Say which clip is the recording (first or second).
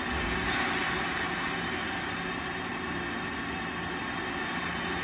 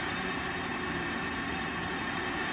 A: first